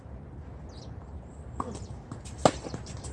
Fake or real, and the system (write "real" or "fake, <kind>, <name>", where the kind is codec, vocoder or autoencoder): real